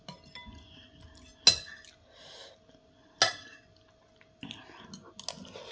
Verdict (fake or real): real